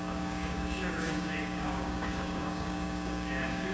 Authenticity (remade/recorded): remade